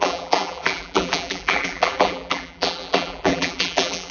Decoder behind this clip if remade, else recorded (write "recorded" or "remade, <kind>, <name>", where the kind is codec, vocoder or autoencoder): remade, vocoder, BigVGAN v2